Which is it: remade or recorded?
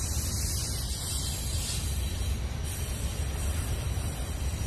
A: recorded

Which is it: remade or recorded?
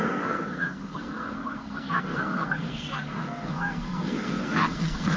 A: remade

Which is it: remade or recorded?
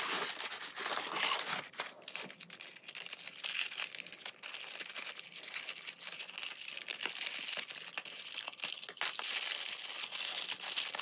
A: recorded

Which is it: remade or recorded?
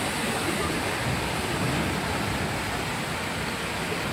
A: recorded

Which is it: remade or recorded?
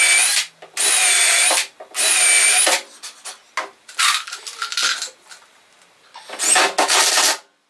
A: recorded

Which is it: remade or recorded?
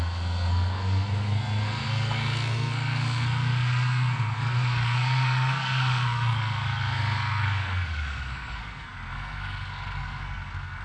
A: remade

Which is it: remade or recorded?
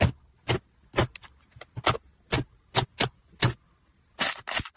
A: recorded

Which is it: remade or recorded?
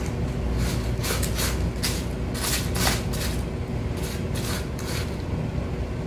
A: recorded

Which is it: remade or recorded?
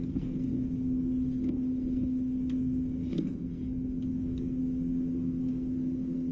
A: remade